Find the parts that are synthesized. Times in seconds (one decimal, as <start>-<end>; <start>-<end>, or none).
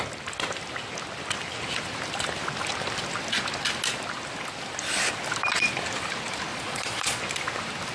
6.5-7.2